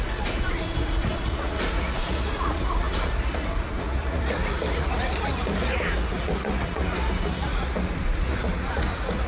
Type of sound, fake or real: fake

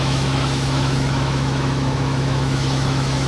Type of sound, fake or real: fake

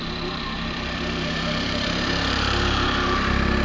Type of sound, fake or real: fake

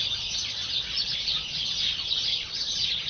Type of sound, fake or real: fake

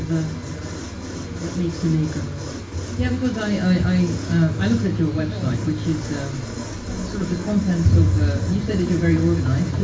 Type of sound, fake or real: real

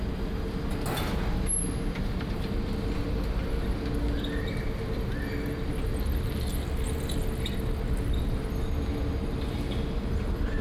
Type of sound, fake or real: real